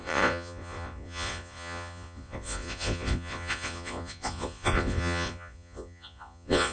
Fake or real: fake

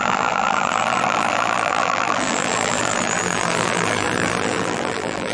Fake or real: fake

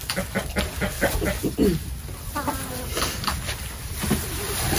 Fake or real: real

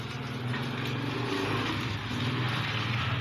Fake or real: real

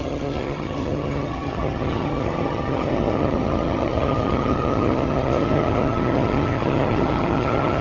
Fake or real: fake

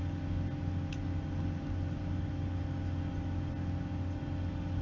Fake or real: real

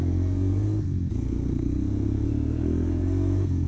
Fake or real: fake